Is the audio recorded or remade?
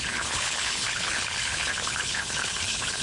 remade